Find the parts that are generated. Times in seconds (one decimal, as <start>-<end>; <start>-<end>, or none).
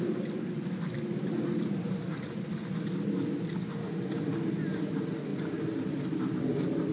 none